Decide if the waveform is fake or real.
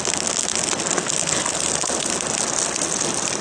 real